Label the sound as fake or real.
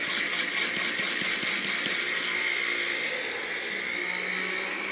real